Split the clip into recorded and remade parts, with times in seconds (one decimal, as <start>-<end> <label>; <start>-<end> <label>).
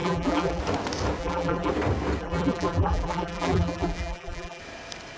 0.0-0.6 remade; 0.6-1.2 recorded; 1.2-1.7 remade; 1.7-2.2 recorded; 2.2-4.6 remade; 4.6-5.2 recorded